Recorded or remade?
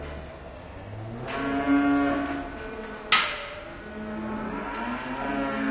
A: recorded